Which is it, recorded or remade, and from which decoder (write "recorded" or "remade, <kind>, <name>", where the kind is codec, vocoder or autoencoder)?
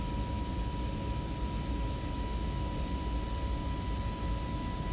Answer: recorded